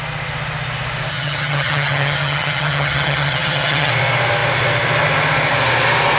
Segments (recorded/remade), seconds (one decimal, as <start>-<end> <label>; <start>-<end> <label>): 0.0-1.1 recorded; 1.1-3.9 remade; 3.9-6.2 recorded